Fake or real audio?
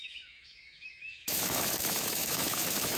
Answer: fake